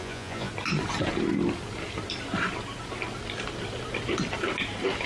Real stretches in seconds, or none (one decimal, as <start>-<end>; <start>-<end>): 0.5-5.1